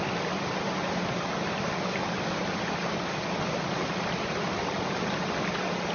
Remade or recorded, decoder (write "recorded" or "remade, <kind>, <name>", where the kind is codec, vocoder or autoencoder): recorded